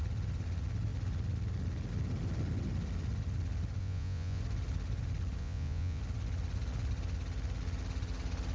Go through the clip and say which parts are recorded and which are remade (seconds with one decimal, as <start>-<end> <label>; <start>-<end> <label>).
0.0-3.8 recorded; 3.8-4.4 remade; 4.4-5.4 recorded; 5.4-6.0 remade; 6.0-8.5 recorded